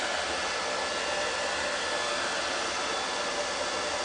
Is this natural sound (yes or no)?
yes